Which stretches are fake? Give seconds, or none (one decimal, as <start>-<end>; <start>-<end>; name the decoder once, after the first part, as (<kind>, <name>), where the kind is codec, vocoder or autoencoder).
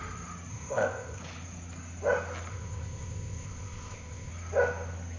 0.5-1.2 (codec, ZipCodec); 2.5-4.3